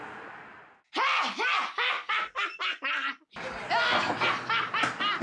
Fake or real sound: real